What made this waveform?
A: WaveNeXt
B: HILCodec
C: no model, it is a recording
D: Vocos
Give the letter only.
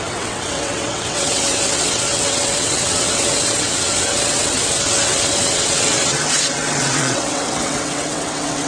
A